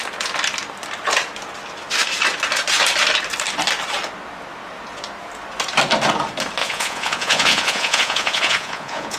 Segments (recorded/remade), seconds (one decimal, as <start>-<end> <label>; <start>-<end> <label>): 0.0-6.6 recorded; 6.6-9.2 remade